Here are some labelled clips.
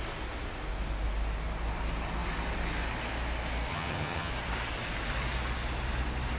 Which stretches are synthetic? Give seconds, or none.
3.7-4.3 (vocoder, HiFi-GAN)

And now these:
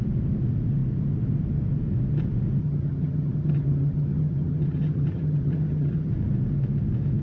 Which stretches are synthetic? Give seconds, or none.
2.6-6.1 (vocoder, HiFi-GAN)

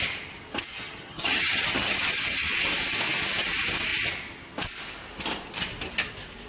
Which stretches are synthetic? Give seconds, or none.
0.7-2.5 (vocoder, HiFi-GAN)

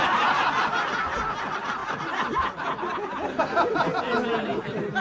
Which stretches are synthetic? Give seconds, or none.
none